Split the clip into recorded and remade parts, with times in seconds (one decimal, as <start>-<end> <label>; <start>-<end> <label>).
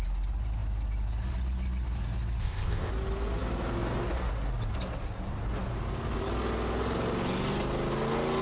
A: 0.0-2.4 recorded; 2.4-2.9 remade; 2.9-8.4 recorded